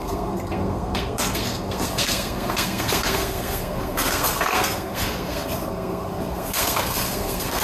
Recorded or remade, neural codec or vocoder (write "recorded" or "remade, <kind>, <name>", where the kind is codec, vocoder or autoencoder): remade, codec, SNAC